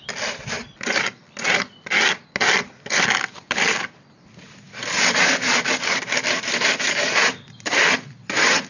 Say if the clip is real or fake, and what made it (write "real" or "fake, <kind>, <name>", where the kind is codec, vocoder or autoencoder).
real